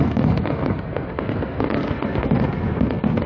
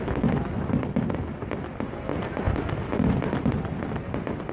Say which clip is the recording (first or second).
second